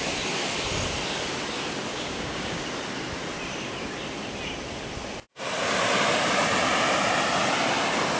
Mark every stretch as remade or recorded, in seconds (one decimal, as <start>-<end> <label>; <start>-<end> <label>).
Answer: 0.0-1.9 recorded; 1.9-2.6 remade; 2.6-8.2 recorded